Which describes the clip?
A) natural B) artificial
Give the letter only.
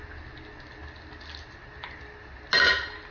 A